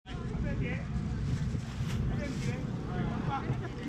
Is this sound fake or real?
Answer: real